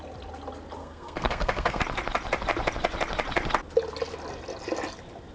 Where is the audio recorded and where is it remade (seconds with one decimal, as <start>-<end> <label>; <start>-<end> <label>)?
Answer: 0.0-0.8 recorded; 0.8-1.8 remade; 1.8-5.3 recorded